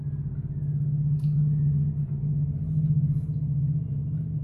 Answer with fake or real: real